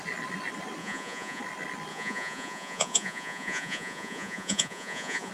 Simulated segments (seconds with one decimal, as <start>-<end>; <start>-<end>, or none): 0.8-1.4; 1.9-5.3

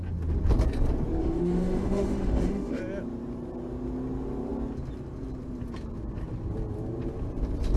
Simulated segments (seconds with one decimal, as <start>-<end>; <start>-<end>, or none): 1.2-2.8

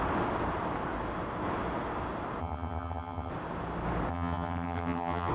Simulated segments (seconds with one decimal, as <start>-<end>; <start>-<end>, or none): 2.4-3.3; 4.1-5.3

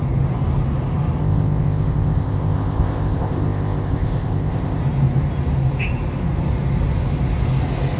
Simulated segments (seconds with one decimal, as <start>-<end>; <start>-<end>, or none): 1.2-4.8

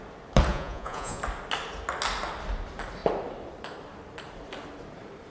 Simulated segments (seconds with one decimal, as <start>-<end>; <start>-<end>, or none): 0.5-1.2